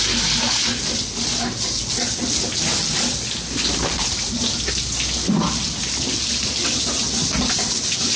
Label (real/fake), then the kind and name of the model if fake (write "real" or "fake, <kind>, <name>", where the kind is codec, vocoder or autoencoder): real